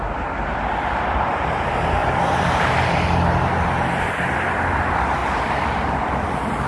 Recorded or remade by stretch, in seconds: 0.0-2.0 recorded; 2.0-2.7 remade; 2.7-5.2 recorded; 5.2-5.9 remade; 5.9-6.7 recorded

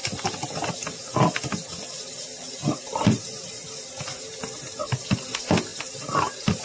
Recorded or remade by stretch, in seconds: 0.0-6.6 recorded

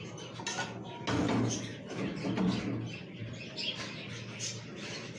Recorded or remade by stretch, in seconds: 0.0-1.7 recorded; 1.7-2.6 remade; 2.6-5.2 recorded

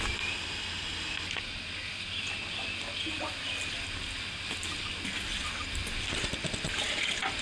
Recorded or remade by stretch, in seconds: 0.0-7.4 recorded

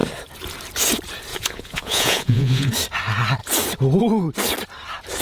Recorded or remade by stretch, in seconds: 0.0-1.3 recorded; 1.3-2.7 remade; 2.7-5.2 recorded

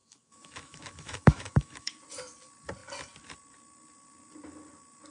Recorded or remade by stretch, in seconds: 0.0-1.9 remade; 1.9-5.1 recorded

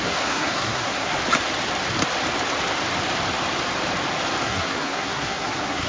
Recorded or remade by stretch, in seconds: 0.0-1.2 remade; 1.2-4.4 recorded; 4.4-5.9 remade

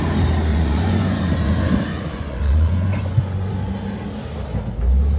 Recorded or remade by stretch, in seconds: 0.0-0.5 recorded; 0.5-1.5 remade; 1.5-1.9 recorded; 1.9-3.5 remade; 3.5-5.2 recorded